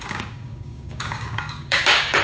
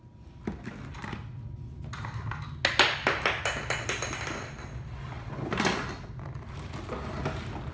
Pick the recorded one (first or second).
second